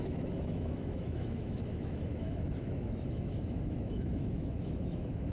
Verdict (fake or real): fake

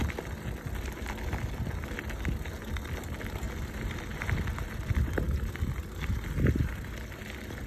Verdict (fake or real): real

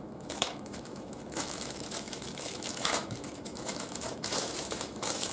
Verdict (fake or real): fake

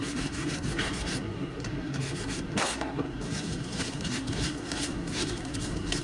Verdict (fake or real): fake